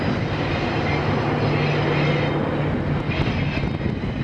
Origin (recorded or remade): recorded